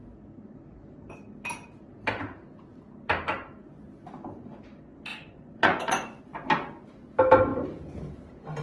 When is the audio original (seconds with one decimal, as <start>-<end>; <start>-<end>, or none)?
0.0-5.1; 6.2-8.6